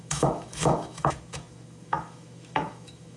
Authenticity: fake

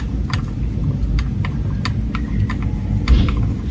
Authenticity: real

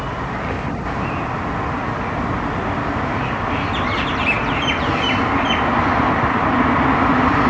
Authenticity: real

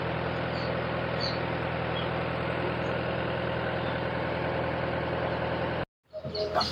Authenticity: real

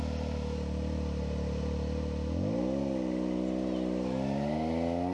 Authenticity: real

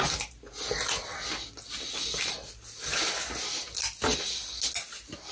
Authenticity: real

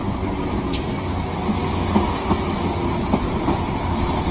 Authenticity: real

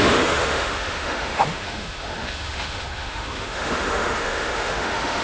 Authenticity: fake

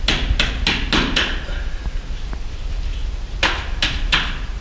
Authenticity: real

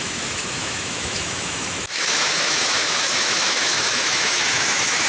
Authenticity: fake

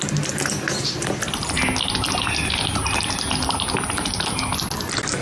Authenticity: real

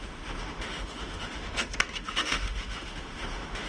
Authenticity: fake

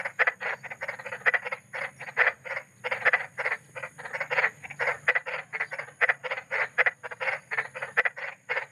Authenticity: real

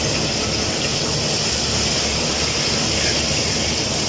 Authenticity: real